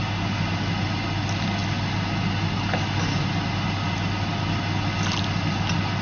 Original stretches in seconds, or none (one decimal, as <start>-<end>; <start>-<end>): 0.0-6.0